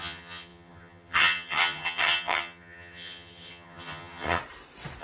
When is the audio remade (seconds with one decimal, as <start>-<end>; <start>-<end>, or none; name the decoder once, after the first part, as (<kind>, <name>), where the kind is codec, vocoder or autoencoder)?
0.0-4.4 (vocoder, HiFi-GAN)